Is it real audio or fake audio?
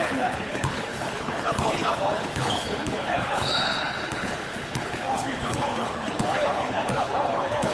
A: fake